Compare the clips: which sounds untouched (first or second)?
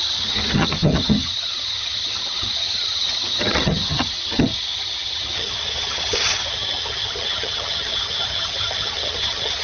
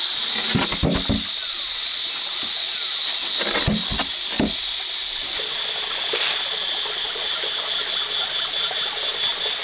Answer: second